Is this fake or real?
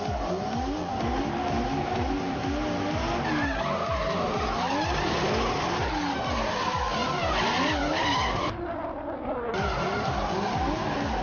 real